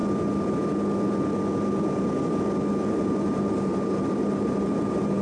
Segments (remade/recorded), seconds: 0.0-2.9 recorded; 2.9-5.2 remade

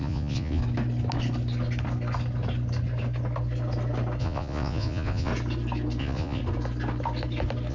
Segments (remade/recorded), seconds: 0.0-0.6 remade; 0.6-4.2 recorded; 4.2-5.3 remade; 5.3-6.0 recorded; 6.0-6.4 remade; 6.4-7.7 recorded

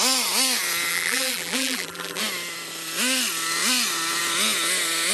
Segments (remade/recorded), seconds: 0.0-0.9 recorded; 0.9-2.2 remade; 2.2-5.1 recorded

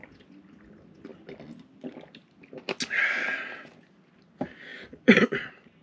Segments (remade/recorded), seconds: 0.0-4.7 recorded; 4.7-5.2 remade; 5.2-5.8 recorded

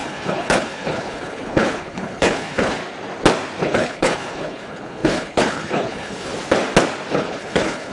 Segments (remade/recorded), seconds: 0.0-2.8 remade; 2.8-3.6 recorded; 3.6-6.3 remade; 6.3-7.1 recorded; 7.1-7.9 remade

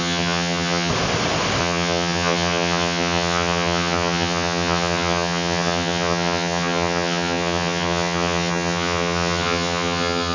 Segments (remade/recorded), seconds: 0.0-0.9 remade; 0.9-1.6 recorded; 1.6-10.3 remade